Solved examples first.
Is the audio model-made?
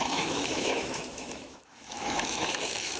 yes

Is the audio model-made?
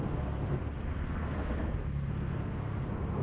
yes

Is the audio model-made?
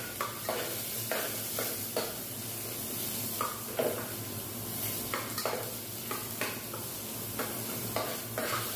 no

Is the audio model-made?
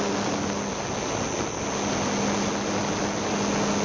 no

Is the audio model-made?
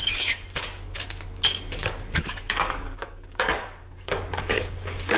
yes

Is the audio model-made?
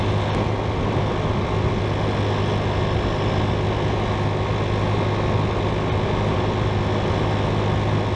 no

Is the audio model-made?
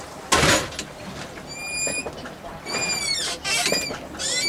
no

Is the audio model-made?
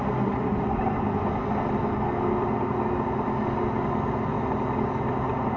no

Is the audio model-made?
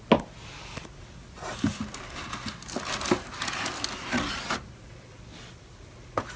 no